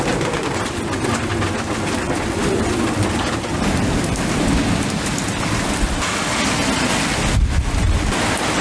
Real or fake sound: real